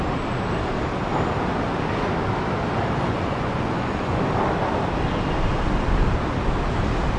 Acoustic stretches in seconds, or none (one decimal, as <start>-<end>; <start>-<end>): 0.0-3.1; 4.2-7.2